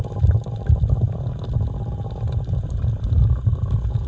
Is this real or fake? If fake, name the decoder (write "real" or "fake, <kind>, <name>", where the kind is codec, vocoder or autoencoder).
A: real